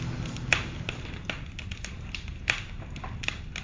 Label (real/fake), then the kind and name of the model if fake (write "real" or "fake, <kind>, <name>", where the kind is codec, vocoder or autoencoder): real